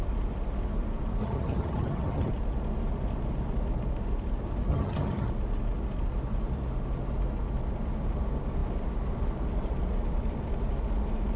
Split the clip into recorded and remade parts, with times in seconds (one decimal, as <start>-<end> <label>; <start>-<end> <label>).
0.0-1.2 recorded; 1.2-2.3 remade; 2.3-4.7 recorded; 4.7-5.3 remade; 5.3-11.4 recorded